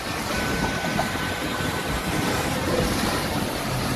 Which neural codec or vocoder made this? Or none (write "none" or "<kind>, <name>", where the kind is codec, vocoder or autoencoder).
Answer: vocoder, BigVGAN v2